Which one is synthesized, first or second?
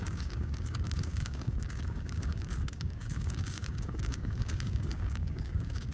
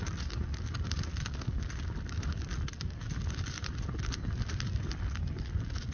first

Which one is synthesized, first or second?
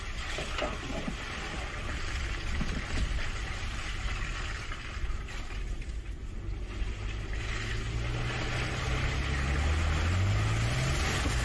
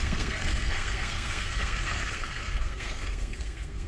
second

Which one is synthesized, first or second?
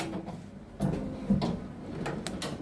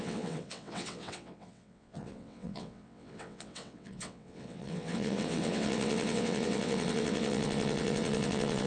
second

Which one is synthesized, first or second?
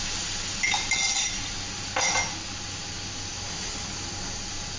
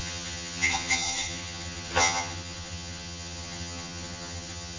second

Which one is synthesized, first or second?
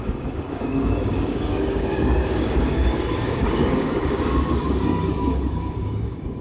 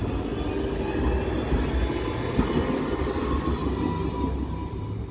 first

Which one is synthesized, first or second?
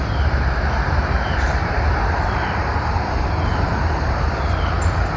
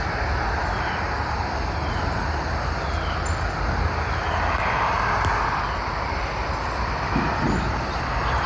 first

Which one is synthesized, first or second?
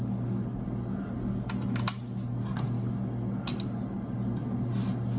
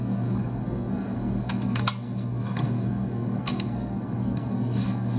second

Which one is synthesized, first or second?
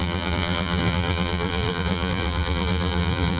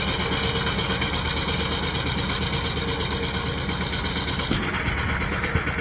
first